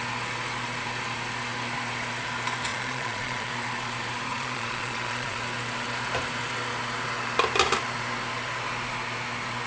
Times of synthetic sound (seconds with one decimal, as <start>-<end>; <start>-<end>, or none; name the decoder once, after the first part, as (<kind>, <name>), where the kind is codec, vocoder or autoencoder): 2.7-3.5 (vocoder, Vocos); 4.3-5.4